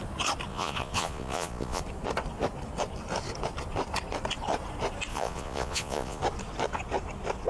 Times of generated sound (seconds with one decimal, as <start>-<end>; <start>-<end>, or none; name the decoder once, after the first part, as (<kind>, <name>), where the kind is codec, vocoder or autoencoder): 0.5-1.8 (vocoder, Vocos); 5.1-6.2